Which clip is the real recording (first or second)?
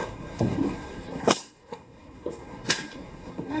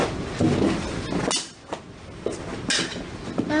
second